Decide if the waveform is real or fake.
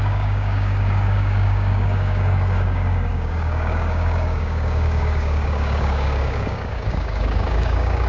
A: fake